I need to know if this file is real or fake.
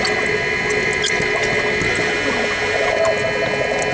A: real